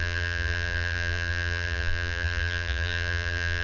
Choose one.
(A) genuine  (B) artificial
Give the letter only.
B